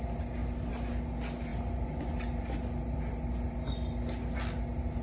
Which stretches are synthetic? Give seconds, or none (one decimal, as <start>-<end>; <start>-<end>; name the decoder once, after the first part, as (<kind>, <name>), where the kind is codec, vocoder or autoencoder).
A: none